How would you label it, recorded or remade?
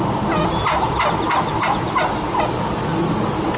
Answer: recorded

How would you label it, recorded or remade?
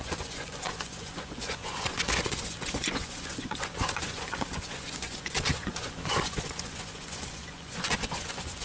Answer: remade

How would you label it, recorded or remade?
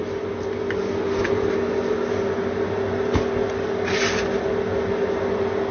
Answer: recorded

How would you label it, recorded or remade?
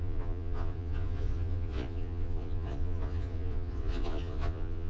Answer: remade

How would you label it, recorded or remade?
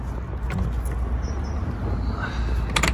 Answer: recorded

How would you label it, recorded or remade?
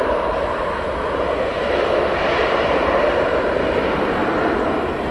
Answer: recorded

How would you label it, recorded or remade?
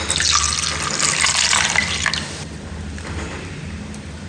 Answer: recorded